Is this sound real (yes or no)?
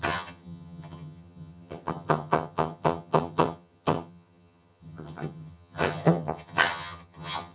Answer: no